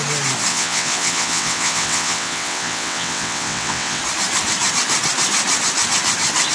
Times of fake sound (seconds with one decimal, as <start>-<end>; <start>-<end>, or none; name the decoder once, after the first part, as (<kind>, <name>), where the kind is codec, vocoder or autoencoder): 0.5-4.0 (vocoder, WaveNeXt)

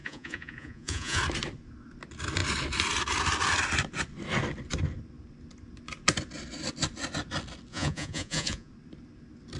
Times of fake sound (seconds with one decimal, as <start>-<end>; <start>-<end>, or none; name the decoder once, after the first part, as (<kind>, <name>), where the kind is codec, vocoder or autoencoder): 0.0-1.2 (vocoder, Vocos); 7.7-8.7

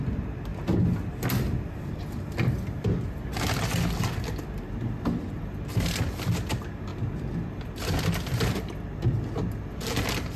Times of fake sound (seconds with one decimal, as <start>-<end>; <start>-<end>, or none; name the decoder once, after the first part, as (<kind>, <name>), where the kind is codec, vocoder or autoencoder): none